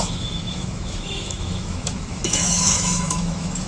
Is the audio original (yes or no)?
no